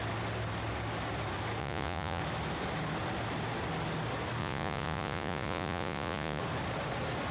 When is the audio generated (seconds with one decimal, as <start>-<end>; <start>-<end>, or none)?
1.6-2.2; 4.4-6.4